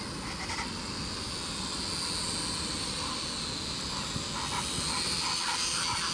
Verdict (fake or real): real